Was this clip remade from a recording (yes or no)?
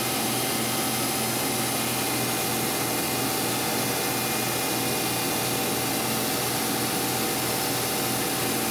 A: no